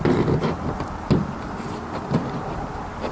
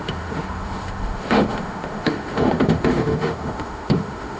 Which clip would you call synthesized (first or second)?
second